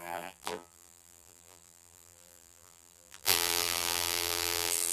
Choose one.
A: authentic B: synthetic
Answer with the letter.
B